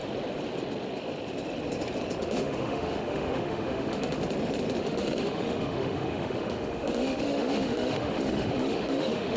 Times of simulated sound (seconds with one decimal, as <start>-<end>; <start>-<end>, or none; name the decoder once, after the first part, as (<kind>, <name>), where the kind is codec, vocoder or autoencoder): 2.2-4.2 (autoencoder, DAC-VAE); 4.8-9.4

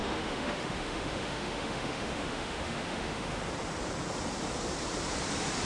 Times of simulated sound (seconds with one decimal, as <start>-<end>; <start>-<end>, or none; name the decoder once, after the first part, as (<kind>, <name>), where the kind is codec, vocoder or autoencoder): 0.0-3.4 (autoencoder, DAC-VAE)

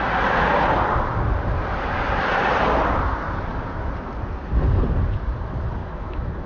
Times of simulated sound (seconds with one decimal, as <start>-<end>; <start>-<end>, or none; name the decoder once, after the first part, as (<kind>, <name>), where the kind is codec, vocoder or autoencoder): 5.8-6.5 (autoencoder, DAC-VAE)